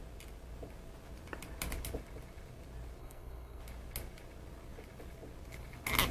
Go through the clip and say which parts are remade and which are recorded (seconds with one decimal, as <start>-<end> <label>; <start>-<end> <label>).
0.0-3.0 recorded; 3.0-3.6 remade; 3.6-6.1 recorded